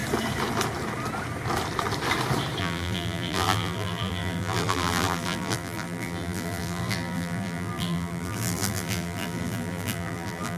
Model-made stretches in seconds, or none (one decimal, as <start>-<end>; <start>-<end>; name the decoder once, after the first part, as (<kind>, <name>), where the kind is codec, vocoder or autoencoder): 2.6-10.6 (vocoder, BigVGAN v2)